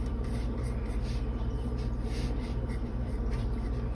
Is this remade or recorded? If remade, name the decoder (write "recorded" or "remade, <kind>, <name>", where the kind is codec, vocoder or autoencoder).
remade, vocoder, BigVGAN v2